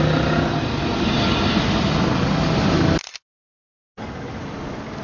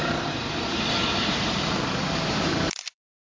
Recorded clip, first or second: first